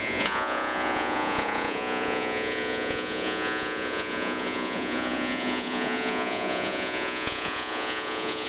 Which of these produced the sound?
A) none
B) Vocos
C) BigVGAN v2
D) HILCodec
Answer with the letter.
B